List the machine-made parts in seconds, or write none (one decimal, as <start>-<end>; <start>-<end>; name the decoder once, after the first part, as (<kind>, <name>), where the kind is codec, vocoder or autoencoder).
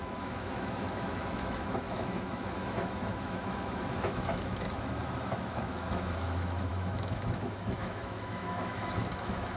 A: 0.0-9.6 (autoencoder, DAC-VAE)